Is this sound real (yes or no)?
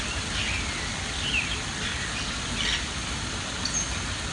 yes